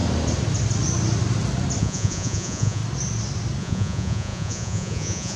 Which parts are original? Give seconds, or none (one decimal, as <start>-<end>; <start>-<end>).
0.0-1.8; 2.8-3.6